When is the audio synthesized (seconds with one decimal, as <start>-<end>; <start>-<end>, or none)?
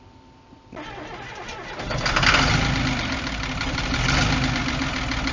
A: none